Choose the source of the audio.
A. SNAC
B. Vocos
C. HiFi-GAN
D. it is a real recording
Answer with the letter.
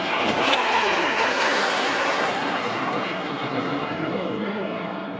A